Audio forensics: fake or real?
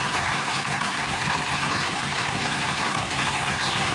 fake